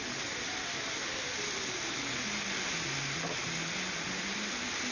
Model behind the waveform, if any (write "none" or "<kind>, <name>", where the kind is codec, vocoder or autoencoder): none